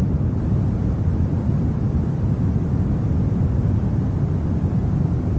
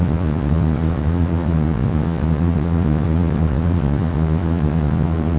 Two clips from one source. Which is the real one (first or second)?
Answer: first